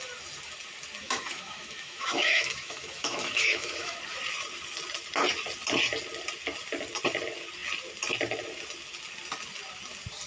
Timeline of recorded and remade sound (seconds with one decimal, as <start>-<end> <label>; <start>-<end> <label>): 0.0-1.0 recorded; 1.0-4.0 remade; 4.0-10.3 recorded